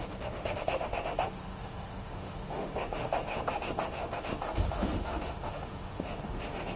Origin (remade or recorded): remade